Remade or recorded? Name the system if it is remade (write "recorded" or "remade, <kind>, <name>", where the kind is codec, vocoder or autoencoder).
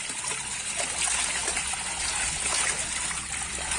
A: recorded